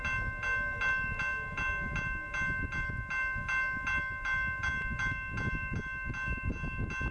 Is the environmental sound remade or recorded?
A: recorded